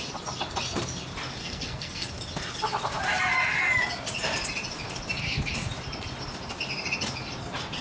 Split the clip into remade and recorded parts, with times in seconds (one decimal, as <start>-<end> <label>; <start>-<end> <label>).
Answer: 0.0-1.4 recorded; 1.4-2.1 remade; 2.1-7.8 recorded